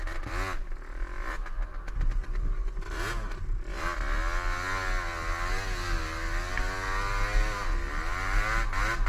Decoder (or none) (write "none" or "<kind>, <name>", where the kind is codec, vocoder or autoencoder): none